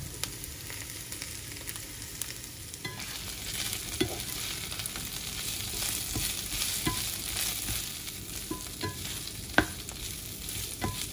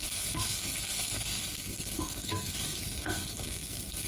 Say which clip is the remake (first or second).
second